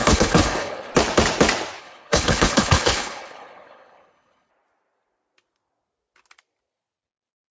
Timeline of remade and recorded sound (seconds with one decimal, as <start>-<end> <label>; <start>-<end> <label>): 0.0-0.9 remade; 0.9-1.8 recorded; 1.8-4.5 remade; 4.5-7.5 recorded